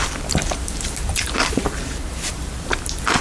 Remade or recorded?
remade